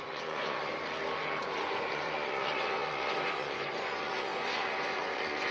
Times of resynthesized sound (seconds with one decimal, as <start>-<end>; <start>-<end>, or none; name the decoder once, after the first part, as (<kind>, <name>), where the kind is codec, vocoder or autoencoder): 0.0-0.7 (vocoder, Vocos); 1.4-5.5